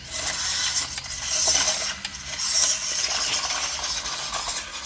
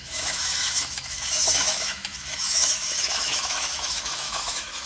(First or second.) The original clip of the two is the first